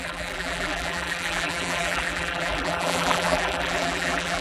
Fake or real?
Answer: fake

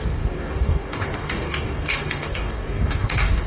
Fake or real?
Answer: fake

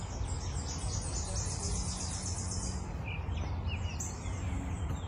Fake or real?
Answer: real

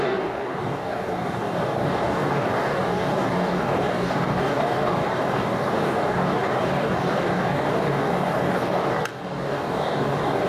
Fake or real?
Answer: fake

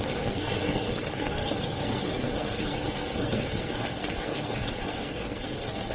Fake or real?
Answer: fake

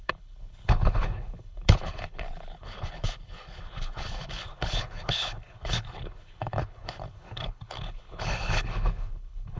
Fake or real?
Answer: fake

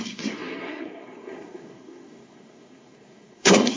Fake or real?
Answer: fake